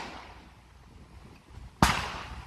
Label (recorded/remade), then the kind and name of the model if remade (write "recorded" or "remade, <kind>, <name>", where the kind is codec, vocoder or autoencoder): recorded